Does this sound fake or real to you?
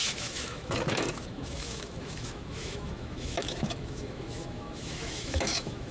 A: fake